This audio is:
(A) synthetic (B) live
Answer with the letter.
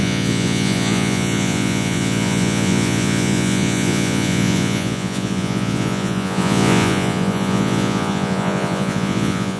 A